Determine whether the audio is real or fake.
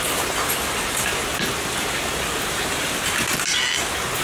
real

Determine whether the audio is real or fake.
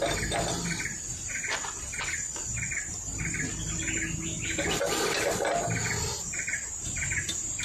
real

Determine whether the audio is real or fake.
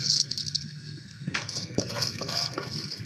fake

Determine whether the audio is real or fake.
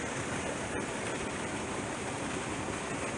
real